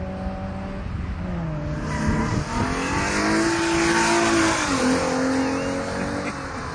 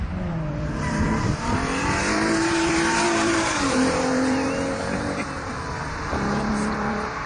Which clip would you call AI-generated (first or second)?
second